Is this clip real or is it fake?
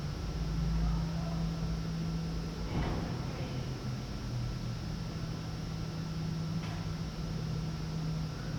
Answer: real